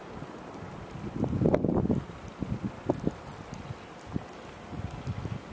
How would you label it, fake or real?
real